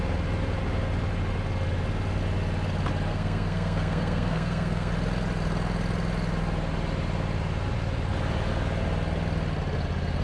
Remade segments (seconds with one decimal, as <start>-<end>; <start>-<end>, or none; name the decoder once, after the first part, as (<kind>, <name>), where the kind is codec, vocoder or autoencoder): 3.1-4.9 (codec, SNAC)